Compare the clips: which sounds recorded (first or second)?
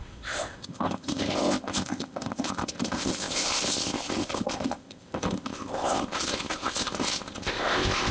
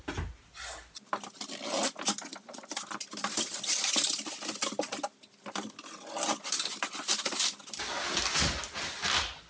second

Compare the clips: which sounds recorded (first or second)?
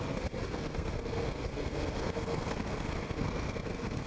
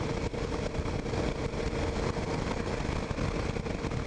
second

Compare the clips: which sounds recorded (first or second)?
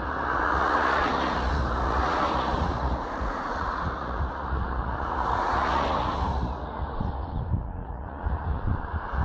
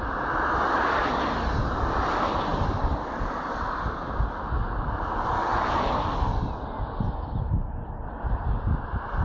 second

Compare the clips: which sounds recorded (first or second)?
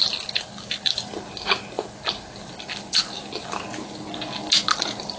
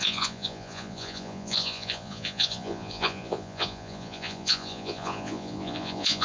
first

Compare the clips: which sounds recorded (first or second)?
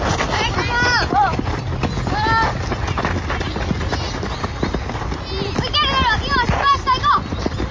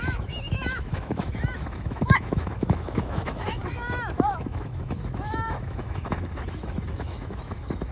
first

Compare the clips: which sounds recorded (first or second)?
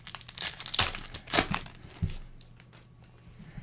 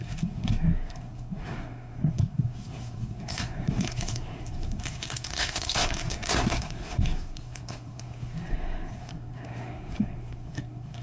first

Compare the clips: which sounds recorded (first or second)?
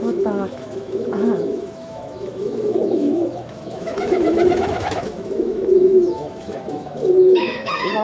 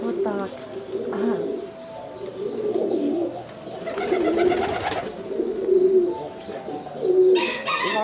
second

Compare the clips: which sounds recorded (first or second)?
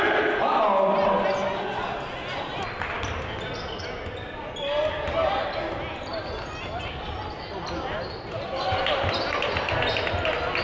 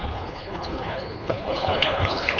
first